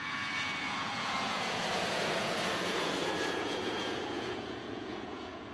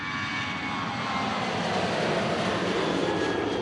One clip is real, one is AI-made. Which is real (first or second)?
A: second